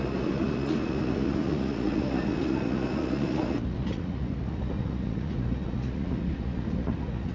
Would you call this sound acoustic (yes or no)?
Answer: no